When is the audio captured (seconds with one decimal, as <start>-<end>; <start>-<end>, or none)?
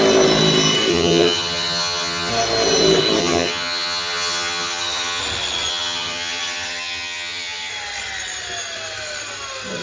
0.0-0.9; 2.3-3.2; 5.2-5.7; 7.7-9.8